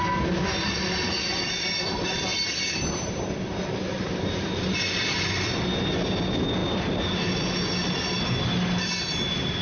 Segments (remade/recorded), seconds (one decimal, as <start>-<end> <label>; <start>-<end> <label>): 0.0-9.6 recorded